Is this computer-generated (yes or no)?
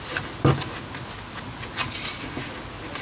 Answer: no